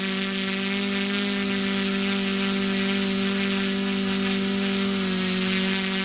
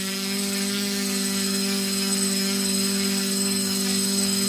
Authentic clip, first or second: first